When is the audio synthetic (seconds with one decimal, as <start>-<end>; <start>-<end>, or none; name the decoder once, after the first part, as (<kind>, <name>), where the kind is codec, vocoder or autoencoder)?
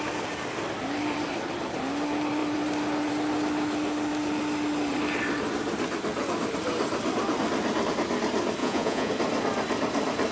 8.6-9.1 (vocoder, Vocos)